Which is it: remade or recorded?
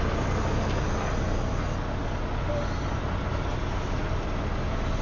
recorded